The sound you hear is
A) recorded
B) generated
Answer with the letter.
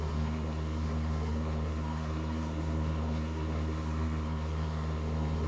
B